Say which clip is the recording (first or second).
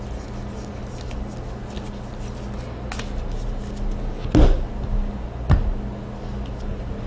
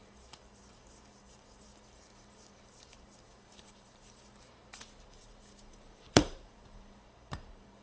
first